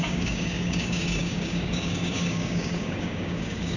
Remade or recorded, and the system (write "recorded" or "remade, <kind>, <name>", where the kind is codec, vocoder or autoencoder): remade, codec, DAC